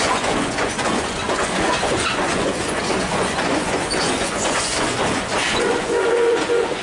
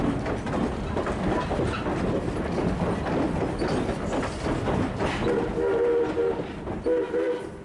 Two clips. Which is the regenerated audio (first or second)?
first